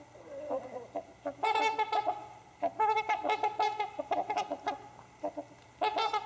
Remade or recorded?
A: recorded